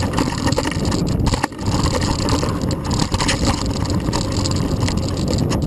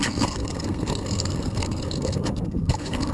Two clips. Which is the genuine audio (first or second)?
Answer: first